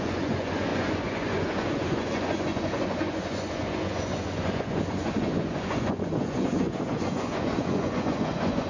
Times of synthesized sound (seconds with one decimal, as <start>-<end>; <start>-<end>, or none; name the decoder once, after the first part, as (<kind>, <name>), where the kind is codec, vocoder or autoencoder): 0.0-8.7 (vocoder, Vocos)